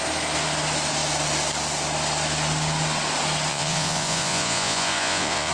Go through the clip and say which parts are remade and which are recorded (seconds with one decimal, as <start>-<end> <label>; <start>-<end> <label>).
0.0-3.5 recorded; 3.5-5.5 remade